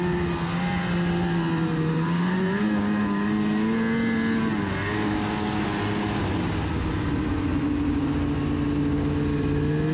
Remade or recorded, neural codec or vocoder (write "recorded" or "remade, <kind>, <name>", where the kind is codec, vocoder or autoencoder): recorded